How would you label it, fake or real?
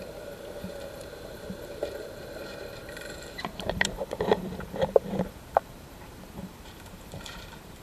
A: fake